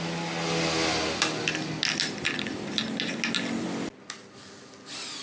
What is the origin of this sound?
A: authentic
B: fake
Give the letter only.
A